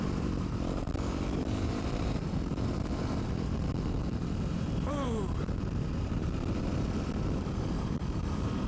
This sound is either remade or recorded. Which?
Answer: remade